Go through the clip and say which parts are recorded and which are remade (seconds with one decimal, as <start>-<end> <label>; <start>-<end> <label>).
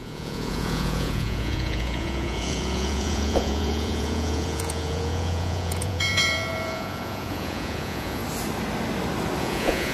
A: 0.0-8.2 remade; 8.2-9.4 recorded; 9.4-9.9 remade